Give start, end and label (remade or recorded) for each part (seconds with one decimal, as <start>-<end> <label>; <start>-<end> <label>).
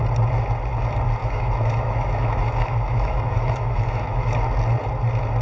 0.0-1.2 recorded; 1.2-4.4 remade; 4.4-5.4 recorded